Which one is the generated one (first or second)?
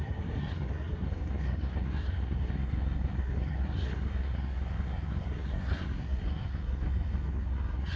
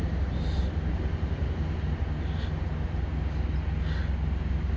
first